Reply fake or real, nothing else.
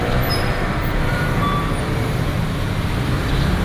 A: fake